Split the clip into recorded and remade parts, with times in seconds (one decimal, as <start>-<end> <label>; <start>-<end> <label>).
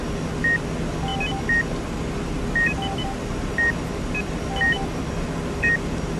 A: 0.0-6.2 recorded